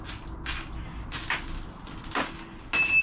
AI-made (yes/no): no